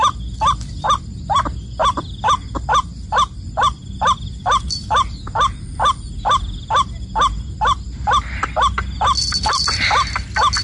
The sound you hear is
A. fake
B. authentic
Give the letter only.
B